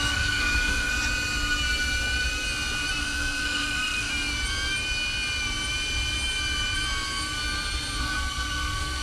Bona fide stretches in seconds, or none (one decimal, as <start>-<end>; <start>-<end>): 0.9-3.0; 4.1-8.0